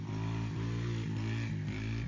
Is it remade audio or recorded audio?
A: recorded